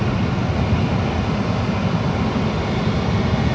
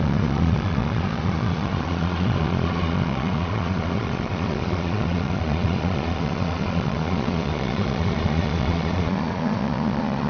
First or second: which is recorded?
first